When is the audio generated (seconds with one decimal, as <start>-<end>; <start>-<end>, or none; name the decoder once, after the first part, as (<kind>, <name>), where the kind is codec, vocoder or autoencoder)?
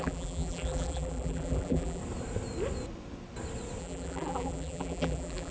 0.0-2.0 (vocoder, BigVGAN v2); 3.8-5.5